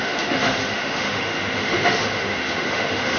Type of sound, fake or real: fake